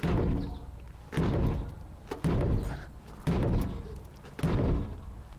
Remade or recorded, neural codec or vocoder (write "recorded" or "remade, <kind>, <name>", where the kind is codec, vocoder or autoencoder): recorded